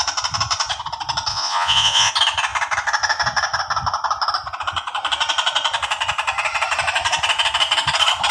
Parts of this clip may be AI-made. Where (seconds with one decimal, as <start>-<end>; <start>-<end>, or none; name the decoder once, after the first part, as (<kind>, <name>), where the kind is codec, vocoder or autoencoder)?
1.3-2.1 (vocoder, Vocos)